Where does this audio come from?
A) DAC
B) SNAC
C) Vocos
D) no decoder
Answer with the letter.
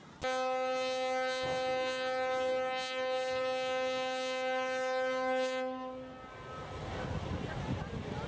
D